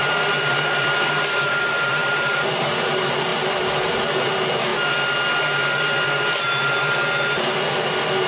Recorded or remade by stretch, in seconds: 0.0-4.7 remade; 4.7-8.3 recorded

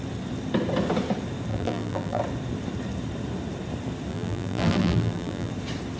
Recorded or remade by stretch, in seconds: 0.0-1.5 recorded; 1.5-2.2 remade; 2.2-4.1 recorded; 4.1-5.5 remade; 5.5-6.0 recorded

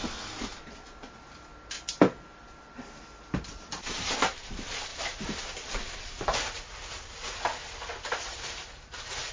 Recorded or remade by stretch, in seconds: 0.0-0.5 remade; 0.5-3.3 recorded; 3.3-4.9 remade; 4.9-5.9 recorded; 5.9-7.5 remade; 7.5-8.1 recorded; 8.1-9.3 remade

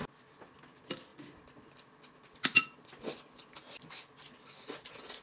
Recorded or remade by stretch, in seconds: 0.0-5.2 recorded

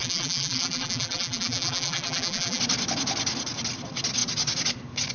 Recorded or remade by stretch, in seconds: 0.0-2.6 remade; 2.6-5.1 recorded

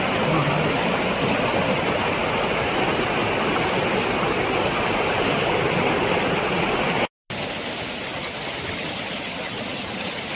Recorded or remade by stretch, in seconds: 0.0-10.4 recorded